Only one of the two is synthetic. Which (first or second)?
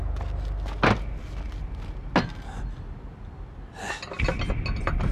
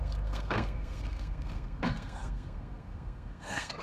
second